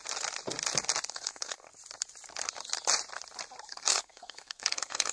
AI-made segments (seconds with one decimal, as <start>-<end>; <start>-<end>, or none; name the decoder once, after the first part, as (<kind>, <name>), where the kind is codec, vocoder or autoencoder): 1.1-1.7 (codec, SNAC); 3.7-5.1